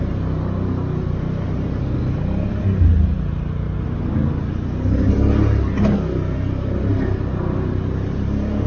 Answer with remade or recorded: recorded